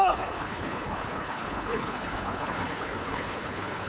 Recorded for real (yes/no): no